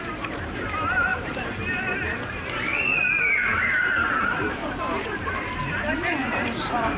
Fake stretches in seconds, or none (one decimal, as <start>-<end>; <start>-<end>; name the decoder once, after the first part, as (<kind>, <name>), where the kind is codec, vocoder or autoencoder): 0.0-2.7 (vocoder, BigVGAN v2); 3.2-7.0